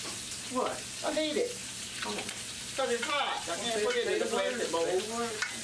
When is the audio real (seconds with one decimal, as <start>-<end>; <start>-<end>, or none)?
0.0-1.6; 3.7-5.6